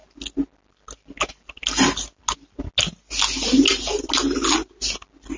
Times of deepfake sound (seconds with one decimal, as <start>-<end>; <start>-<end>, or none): none